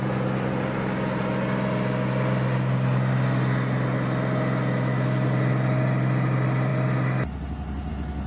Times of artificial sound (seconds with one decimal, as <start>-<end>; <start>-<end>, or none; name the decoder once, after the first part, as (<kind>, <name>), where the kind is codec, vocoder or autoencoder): none